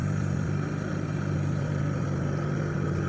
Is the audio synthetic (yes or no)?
yes